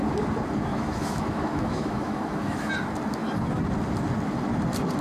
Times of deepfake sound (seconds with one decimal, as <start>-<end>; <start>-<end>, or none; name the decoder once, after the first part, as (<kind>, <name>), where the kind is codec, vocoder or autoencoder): 0.7-2.7 (autoencoder, DAC-VAE)